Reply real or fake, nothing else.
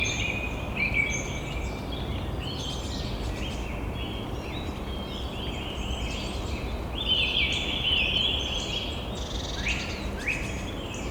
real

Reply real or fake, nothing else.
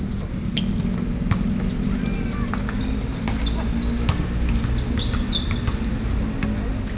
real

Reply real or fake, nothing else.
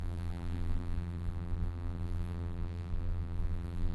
fake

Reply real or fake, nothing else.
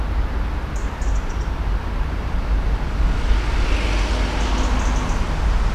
real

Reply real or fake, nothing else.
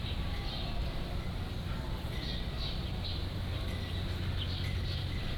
real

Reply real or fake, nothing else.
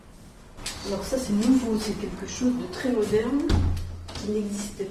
real